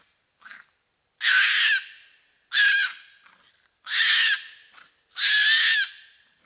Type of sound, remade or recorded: recorded